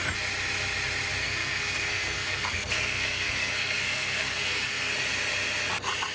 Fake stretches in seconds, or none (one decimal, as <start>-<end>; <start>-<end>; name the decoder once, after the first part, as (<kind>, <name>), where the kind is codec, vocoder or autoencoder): 1.2-4.9 (codec, SNAC)